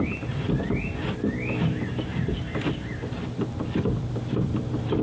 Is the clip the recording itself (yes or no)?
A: yes